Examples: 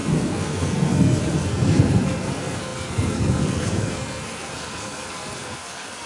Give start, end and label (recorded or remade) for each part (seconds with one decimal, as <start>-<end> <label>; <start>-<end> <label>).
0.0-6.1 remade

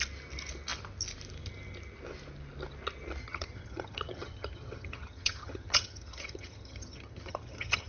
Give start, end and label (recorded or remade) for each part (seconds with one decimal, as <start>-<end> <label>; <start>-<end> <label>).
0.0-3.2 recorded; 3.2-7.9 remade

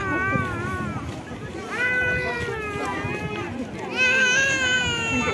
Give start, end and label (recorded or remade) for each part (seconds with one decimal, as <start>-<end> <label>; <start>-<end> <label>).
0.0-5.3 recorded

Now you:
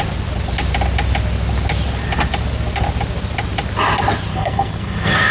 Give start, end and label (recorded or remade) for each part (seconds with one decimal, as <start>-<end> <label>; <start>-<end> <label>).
0.0-4.3 recorded; 4.3-5.3 remade

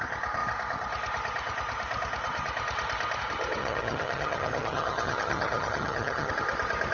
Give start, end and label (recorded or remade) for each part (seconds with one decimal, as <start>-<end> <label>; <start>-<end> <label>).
0.0-3.6 recorded; 3.6-6.3 remade; 6.3-6.9 recorded

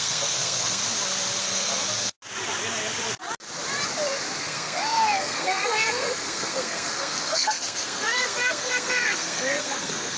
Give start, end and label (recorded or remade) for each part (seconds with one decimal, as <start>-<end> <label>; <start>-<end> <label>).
0.0-0.8 remade; 0.8-1.4 recorded; 1.4-1.8 remade; 1.8-4.4 recorded; 4.4-10.2 remade

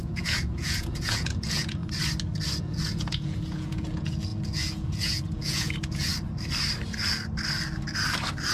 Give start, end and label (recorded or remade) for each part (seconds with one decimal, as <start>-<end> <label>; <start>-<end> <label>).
0.0-1.8 remade; 1.8-2.6 recorded; 2.6-6.1 remade; 6.1-8.5 recorded